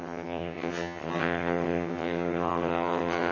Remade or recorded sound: remade